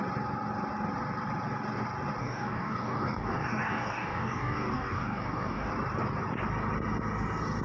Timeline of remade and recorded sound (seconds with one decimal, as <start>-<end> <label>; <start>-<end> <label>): 0.0-2.2 recorded; 2.2-5.7 remade; 5.7-7.6 recorded